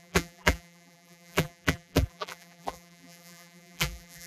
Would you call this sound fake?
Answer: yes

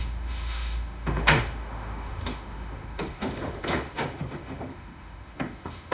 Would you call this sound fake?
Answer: yes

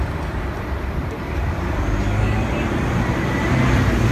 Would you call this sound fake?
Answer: no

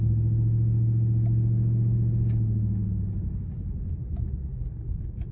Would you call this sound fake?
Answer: no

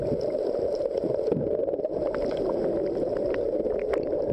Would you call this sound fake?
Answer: no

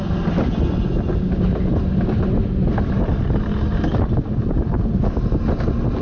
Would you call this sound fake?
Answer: no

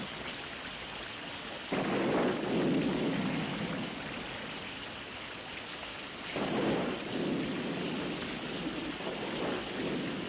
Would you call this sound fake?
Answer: no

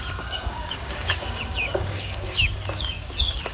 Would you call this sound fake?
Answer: yes